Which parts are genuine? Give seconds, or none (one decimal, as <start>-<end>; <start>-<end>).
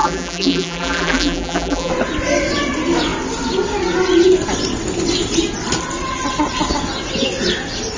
1.9-8.0